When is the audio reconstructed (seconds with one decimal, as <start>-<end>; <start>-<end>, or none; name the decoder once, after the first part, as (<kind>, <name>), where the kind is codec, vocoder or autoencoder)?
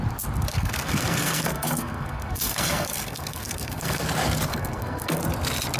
0.5-4.0 (codec, SNAC); 4.5-5.2